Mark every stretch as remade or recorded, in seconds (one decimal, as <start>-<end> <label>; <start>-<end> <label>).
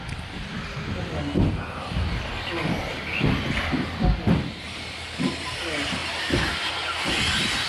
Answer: 0.0-7.7 recorded